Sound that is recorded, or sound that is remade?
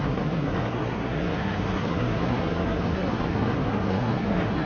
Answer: remade